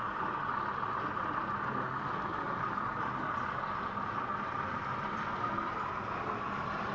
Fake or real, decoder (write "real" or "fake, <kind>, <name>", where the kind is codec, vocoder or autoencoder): real